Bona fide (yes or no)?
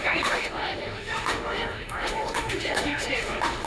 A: no